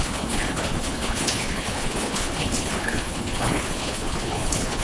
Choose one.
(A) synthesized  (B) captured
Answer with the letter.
A